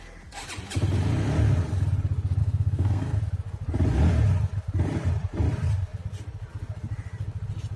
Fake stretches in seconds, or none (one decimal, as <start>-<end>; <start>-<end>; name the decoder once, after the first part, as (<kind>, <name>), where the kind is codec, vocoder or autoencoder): 2.4-3.2 (codec, SNAC)